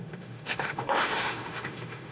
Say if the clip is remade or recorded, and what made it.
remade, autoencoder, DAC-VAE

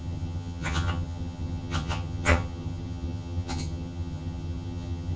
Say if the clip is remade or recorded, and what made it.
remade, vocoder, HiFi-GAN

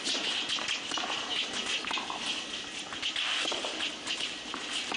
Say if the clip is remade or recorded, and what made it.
recorded